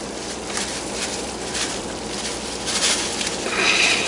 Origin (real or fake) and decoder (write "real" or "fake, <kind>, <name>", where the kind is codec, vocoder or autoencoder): fake, vocoder, BigVGAN v2